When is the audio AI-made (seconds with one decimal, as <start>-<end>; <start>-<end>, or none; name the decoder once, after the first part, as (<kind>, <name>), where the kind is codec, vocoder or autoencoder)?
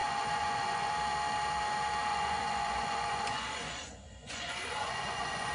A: 0.0-0.9 (vocoder, Vocos); 2.1-5.5